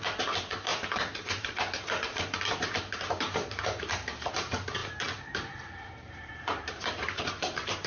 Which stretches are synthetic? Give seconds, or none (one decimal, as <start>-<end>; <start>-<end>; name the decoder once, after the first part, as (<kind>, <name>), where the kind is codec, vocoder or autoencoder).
0.0-7.9 (vocoder, BigVGAN v2)